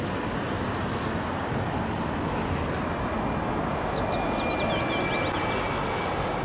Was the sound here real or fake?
real